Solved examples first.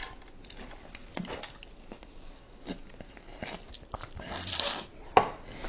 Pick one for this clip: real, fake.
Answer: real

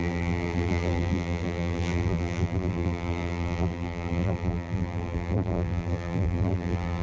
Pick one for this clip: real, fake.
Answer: fake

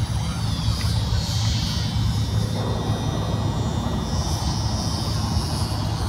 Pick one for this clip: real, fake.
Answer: real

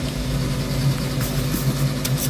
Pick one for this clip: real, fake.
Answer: real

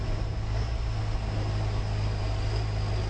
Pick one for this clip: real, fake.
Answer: real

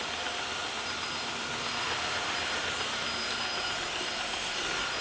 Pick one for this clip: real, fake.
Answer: fake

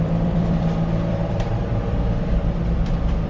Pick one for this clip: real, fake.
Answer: fake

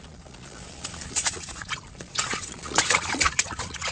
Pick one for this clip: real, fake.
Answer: fake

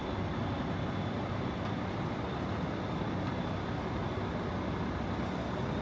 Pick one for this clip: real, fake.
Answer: real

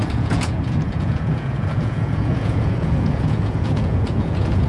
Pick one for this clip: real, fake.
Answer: fake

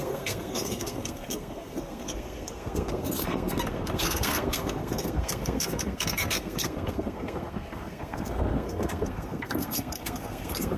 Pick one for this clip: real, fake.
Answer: fake